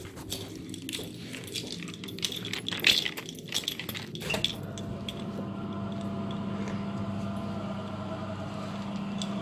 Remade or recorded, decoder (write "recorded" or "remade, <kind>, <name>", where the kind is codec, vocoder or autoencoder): recorded